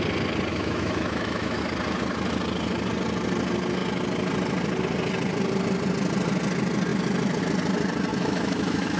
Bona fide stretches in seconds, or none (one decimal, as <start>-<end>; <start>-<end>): 0.0-0.5; 1.6-8.1